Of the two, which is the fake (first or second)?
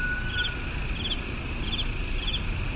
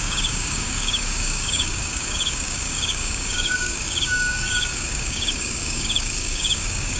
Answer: second